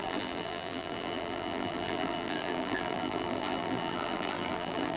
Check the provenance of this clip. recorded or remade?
remade